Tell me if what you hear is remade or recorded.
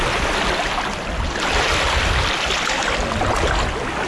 recorded